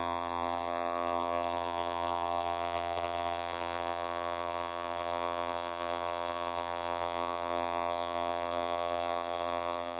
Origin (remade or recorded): remade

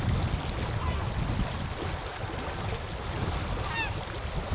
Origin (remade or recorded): recorded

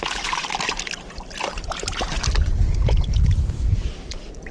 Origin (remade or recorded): remade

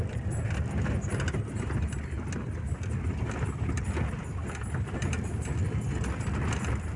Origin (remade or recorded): recorded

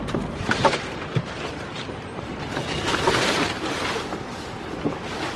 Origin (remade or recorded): remade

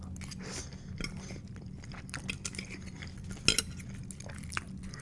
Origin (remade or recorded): recorded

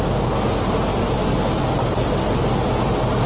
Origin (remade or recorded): recorded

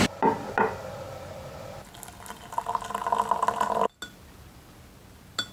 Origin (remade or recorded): recorded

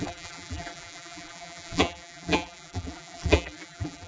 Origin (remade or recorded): remade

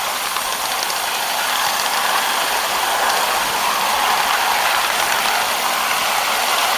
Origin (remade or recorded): recorded